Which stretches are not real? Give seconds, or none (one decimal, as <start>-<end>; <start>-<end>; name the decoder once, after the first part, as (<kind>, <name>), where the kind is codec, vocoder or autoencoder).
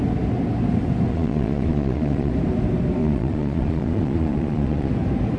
1.1-2.3 (vocoder, Vocos); 3.0-4.9